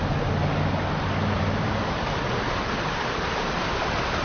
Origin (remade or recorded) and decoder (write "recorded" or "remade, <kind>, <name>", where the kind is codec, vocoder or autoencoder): recorded